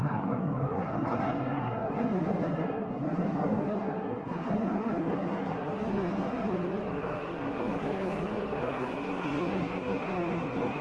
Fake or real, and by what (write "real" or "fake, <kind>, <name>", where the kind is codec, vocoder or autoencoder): fake, codec, SNAC